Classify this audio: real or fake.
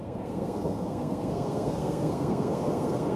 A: fake